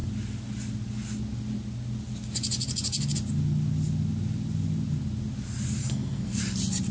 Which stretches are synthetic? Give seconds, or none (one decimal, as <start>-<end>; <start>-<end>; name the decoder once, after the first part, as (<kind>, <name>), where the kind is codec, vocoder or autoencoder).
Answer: 5.8-6.4 (codec, SNAC)